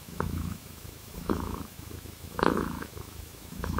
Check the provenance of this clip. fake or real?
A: fake